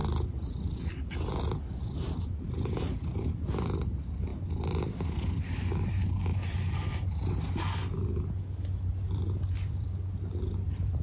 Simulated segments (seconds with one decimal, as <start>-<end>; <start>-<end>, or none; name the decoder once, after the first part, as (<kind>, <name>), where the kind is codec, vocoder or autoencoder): none